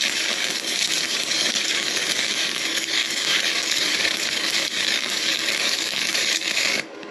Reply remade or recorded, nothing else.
remade